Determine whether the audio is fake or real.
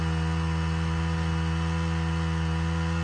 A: real